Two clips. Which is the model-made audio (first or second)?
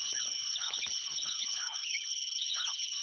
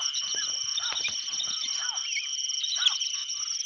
first